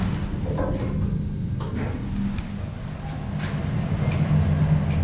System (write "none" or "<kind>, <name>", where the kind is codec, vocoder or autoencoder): none